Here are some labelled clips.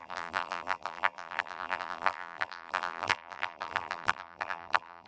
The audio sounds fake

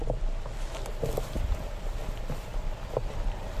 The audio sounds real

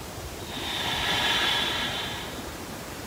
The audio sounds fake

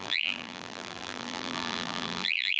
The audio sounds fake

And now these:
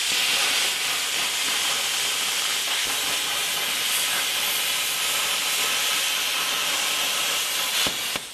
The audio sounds real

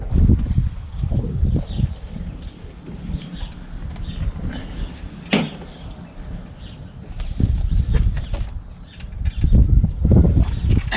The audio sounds real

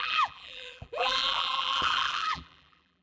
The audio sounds fake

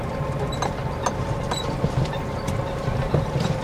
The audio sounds real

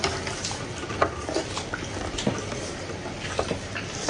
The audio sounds real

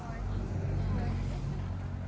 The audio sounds real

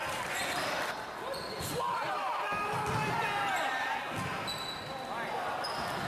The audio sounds real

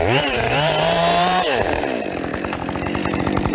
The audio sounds fake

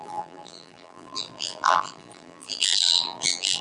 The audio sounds fake